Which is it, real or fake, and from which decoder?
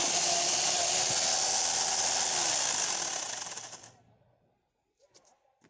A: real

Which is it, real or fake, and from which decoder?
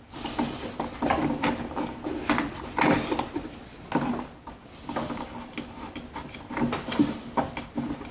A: real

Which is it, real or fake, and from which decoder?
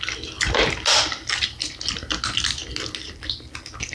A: real